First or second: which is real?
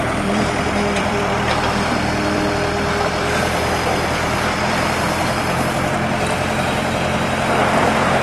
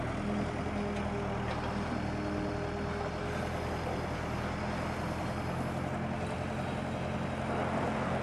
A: second